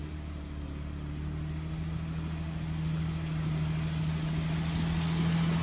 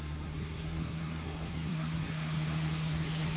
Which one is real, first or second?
first